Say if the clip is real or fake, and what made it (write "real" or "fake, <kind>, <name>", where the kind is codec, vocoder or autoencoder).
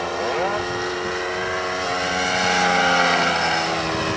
real